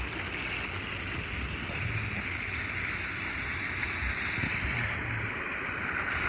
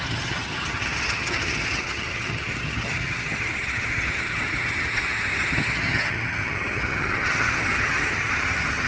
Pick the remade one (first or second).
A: second